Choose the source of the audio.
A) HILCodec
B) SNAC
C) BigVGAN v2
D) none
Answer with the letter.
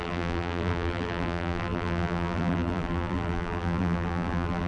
C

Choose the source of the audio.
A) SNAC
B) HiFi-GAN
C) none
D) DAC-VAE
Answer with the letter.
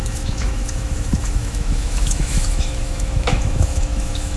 D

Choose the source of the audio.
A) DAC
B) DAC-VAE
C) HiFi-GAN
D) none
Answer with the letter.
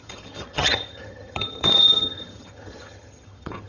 C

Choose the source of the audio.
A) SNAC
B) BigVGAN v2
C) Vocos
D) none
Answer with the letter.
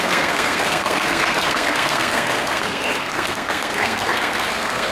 A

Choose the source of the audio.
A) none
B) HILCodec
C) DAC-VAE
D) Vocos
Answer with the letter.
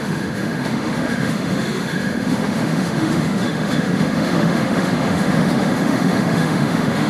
C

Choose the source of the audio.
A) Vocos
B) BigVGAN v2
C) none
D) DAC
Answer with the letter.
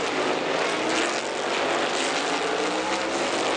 C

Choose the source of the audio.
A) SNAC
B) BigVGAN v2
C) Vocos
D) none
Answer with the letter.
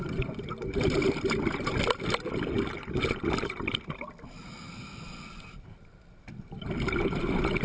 D